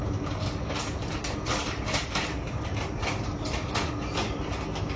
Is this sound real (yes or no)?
no